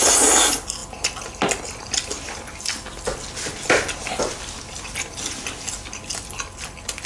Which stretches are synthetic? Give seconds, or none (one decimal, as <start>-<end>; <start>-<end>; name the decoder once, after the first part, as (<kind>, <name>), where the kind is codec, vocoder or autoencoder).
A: none